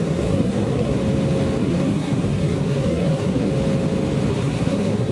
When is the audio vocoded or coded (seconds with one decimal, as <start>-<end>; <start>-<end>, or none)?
0.0-1.0; 1.6-3.5; 4.3-5.1